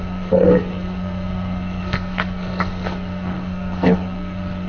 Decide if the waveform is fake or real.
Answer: fake